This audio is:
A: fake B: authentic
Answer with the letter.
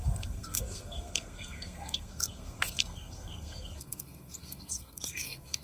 A